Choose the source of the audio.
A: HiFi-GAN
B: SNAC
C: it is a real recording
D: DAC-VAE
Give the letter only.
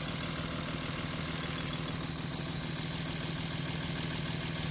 C